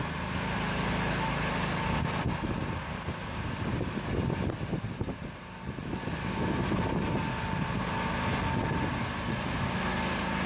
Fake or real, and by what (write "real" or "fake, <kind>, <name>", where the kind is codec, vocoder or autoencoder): real